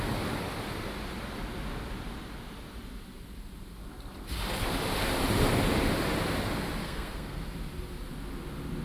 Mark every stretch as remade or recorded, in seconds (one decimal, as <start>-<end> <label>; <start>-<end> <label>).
0.0-6.8 recorded; 6.8-7.4 remade; 7.4-8.8 recorded